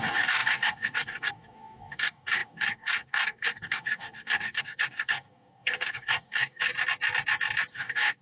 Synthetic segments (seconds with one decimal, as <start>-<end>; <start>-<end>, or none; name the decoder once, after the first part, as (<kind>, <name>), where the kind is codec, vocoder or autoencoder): 0.0-6.7 (codec, DAC); 7.7-8.2